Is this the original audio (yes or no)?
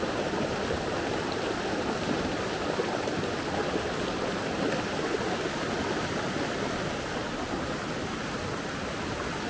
yes